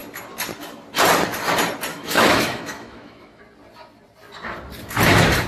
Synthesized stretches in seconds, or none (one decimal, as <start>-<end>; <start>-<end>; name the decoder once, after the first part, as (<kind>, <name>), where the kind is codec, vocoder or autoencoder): 1.9-3.4 (autoencoder, DAC-VAE)